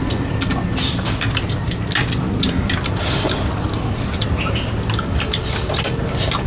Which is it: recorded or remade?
recorded